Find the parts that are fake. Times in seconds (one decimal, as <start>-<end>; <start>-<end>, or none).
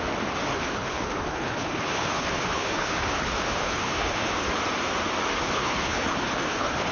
0.5-4.5; 5.3-6.9